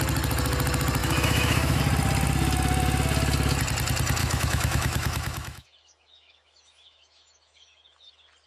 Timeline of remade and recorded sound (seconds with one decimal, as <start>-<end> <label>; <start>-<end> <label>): 0.0-1.0 recorded; 1.0-1.8 remade; 1.8-4.2 recorded; 4.2-8.1 remade; 8.1-8.5 recorded